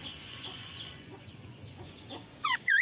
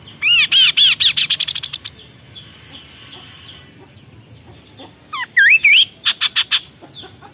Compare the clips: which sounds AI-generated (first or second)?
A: first